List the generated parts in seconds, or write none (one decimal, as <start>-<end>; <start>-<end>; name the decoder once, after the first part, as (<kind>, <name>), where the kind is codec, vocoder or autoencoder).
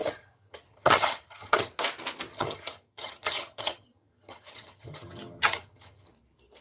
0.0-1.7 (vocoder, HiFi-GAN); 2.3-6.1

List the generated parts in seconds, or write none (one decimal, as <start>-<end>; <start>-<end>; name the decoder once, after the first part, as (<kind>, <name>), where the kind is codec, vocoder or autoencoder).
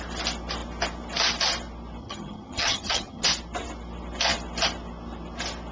2.0-3.2 (vocoder, HiFi-GAN)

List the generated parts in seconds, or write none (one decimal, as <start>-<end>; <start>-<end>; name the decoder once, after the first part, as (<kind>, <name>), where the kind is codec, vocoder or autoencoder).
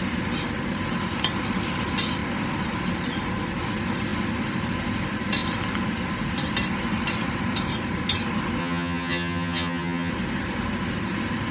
8.6-10.1 (vocoder, HiFi-GAN)